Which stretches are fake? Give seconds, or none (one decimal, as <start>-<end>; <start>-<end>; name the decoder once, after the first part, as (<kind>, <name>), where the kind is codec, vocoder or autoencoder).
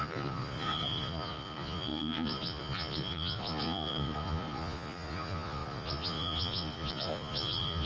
0.0-7.9 (vocoder, Vocos)